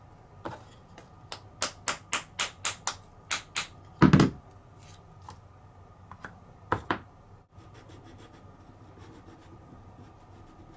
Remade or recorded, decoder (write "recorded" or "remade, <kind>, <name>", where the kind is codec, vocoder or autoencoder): recorded